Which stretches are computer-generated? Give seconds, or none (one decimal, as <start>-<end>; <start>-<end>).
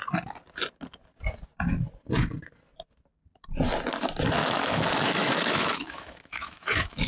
4.4-7.1